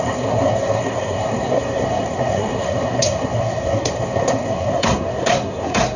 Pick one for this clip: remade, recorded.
remade